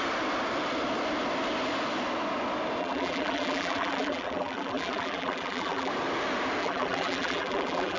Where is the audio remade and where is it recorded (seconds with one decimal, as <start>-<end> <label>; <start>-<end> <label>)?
0.0-2.8 recorded; 2.8-5.9 remade; 5.9-6.6 recorded; 6.6-8.0 remade